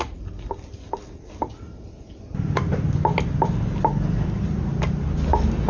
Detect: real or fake real